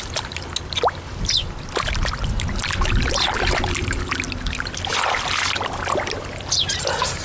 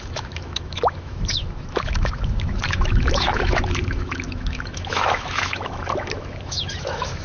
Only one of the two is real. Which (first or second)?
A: first